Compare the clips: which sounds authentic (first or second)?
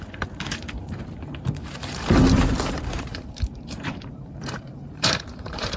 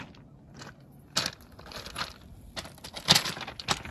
second